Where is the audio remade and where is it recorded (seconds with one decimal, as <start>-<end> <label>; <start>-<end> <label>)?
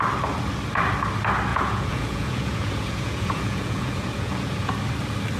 0.0-1.5 recorded; 1.5-4.7 remade; 4.7-5.4 recorded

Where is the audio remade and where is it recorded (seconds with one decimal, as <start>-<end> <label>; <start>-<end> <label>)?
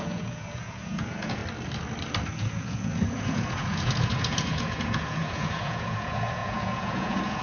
0.0-1.4 remade; 1.4-2.3 recorded; 2.3-7.4 remade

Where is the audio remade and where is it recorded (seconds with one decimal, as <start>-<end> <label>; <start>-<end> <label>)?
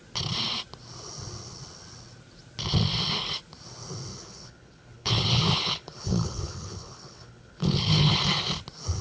0.0-4.1 recorded; 4.1-8.2 remade; 8.2-9.0 recorded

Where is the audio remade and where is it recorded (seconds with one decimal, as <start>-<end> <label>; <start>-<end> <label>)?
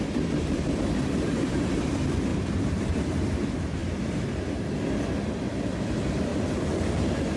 0.0-3.8 remade; 3.8-5.1 recorded; 5.1-6.3 remade; 6.3-7.0 recorded; 7.0-7.4 remade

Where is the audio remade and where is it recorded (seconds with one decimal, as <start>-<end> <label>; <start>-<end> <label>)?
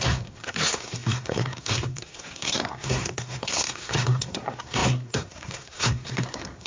0.0-6.7 remade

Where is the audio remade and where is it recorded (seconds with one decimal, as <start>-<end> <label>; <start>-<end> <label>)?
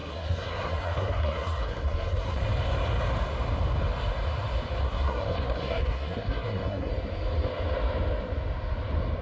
0.0-2.4 remade; 2.4-4.8 recorded; 4.8-6.9 remade; 6.9-9.2 recorded